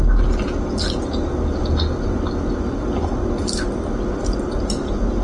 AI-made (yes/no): no